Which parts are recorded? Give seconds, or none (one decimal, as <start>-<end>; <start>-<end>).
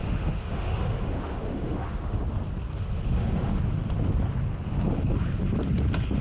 2.2-2.7; 3.6-6.2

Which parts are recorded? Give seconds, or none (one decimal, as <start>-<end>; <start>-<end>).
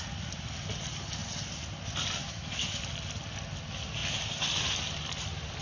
0.0-2.2; 2.8-5.6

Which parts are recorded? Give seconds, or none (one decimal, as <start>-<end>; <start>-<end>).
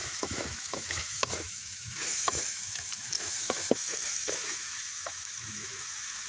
none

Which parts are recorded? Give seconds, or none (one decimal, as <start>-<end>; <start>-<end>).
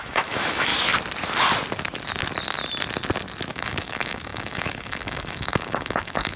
0.7-3.5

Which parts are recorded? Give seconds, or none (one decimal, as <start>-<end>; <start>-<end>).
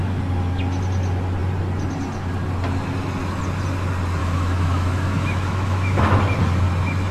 0.0-4.2; 6.1-7.1